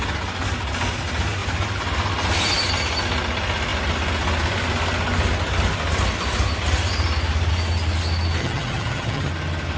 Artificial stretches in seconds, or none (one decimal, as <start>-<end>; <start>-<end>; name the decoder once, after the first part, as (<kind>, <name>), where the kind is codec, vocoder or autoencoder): 8.4-9.3 (vocoder, HiFi-GAN)